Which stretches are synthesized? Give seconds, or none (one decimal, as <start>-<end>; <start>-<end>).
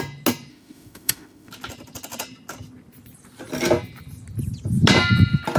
0.5-1.5